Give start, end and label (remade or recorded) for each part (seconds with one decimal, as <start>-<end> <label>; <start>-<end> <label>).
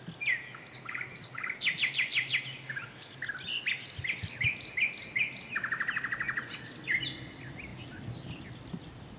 0.0-9.2 recorded